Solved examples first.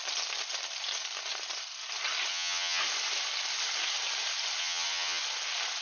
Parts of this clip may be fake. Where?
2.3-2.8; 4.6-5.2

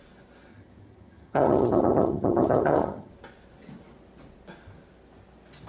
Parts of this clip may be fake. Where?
0.5-3.1

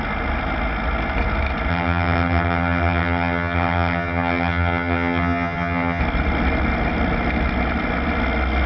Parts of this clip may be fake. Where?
1.7-6.0

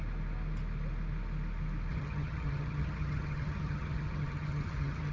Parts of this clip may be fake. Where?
1.9-5.1

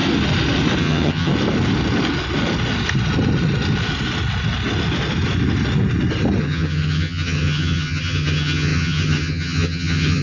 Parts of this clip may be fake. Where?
0.8-1.3; 6.4-10.2